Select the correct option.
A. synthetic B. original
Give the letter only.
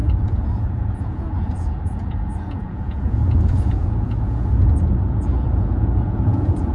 A